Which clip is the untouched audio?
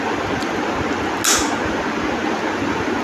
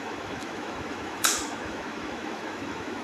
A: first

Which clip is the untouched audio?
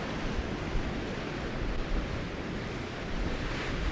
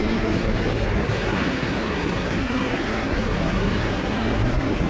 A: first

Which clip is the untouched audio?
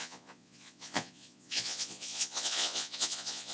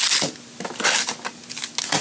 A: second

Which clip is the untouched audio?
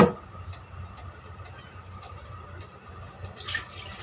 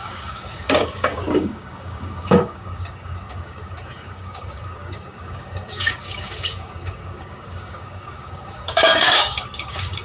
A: first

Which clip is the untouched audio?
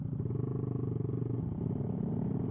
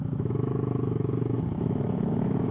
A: first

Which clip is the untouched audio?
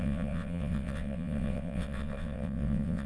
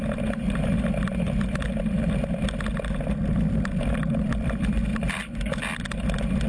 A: second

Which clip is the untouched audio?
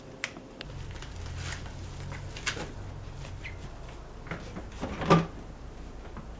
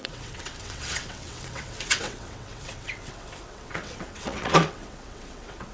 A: first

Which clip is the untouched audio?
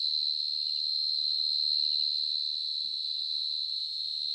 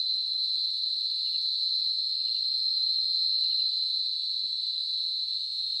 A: first